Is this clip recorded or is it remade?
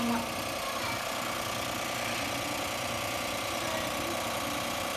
recorded